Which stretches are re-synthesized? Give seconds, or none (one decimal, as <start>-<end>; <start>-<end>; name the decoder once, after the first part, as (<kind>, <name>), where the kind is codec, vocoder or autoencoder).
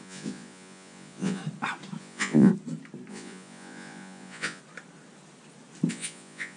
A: 0.0-1.4 (vocoder, Vocos); 2.0-2.5; 3.1-4.6; 5.9-6.6